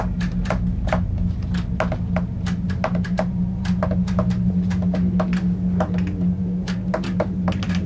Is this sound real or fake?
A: real